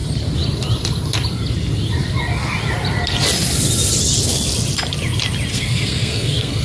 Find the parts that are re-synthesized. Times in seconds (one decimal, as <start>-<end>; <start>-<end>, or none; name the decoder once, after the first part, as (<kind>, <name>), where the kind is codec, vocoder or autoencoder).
5.5-6.6 (codec, SNAC)